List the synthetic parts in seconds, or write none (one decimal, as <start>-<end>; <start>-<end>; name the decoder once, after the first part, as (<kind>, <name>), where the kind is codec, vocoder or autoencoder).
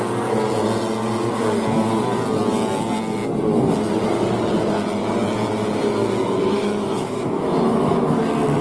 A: 6.4-8.2 (autoencoder, DAC-VAE)